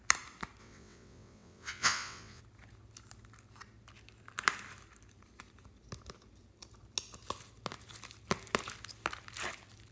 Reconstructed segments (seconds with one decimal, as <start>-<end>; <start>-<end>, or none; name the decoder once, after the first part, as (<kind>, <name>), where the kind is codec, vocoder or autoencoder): 0.6-2.4 (vocoder, WaveNeXt)